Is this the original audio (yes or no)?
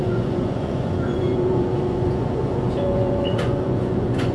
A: no